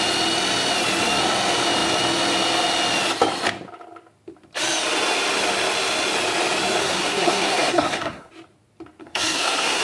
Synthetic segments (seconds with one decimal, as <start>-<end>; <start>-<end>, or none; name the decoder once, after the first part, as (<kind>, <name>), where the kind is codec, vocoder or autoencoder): 6.8-8.3 (codec, SNAC); 9.0-9.8

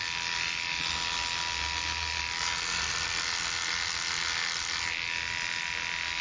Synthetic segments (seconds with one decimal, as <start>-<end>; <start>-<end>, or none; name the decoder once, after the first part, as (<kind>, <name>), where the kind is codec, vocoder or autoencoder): none